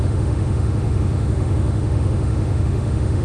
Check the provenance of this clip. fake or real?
fake